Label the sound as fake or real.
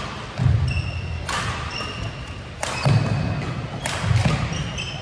real